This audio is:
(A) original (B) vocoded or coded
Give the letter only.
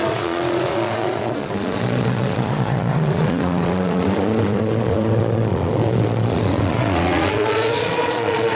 B